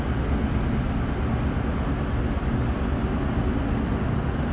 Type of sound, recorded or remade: recorded